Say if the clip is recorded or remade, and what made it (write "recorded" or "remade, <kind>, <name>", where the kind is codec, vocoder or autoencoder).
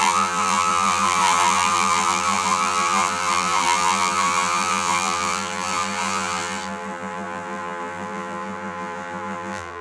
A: remade, vocoder, BigVGAN v2